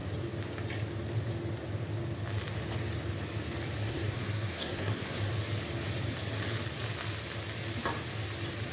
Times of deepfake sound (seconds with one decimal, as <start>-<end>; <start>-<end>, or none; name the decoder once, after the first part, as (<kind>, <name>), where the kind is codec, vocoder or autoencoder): 3.8-5.3 (codec, SNAC)